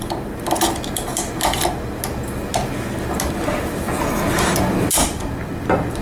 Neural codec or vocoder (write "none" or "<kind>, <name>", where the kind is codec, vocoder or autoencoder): none